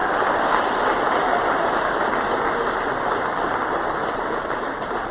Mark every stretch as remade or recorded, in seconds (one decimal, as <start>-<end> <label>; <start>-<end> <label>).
0.0-5.1 recorded